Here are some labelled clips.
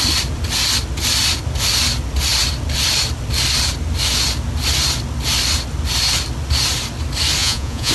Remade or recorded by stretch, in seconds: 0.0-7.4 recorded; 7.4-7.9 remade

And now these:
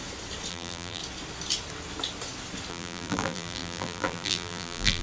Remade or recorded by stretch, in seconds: 0.0-0.5 recorded; 0.5-1.0 remade; 1.0-2.7 recorded; 2.7-5.0 remade

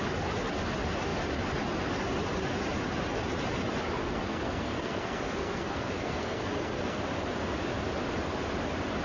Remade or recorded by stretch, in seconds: 0.0-4.0 recorded; 4.0-7.0 remade; 7.0-9.0 recorded

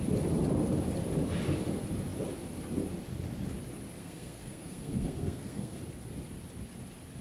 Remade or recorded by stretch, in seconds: 0.0-4.0 recorded; 4.0-5.8 remade; 5.8-7.2 recorded

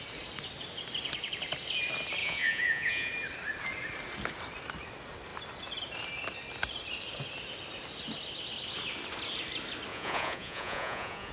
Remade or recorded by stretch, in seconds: 0.0-2.2 recorded; 2.2-3.1 remade; 3.1-9.9 recorded; 9.9-11.3 remade

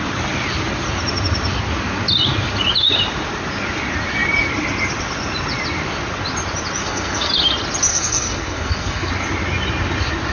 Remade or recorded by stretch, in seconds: 0.0-6.8 recorded; 6.8-7.3 remade; 7.3-7.9 recorded; 7.9-9.1 remade; 9.1-10.3 recorded

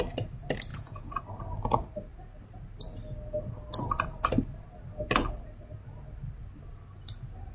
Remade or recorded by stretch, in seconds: 0.0-0.7 recorded; 0.7-1.2 remade; 1.2-7.5 recorded

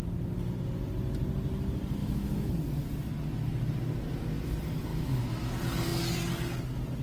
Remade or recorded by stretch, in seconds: 0.0-2.0 recorded; 2.0-2.5 remade; 2.5-4.9 recorded; 4.9-5.5 remade; 5.5-7.0 recorded